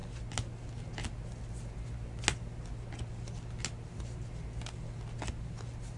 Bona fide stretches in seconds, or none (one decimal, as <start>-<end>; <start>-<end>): 0.0-6.0